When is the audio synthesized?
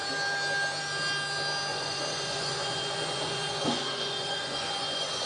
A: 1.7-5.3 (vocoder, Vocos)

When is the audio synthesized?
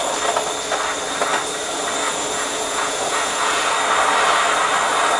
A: 2.0-3.7 (vocoder, Vocos)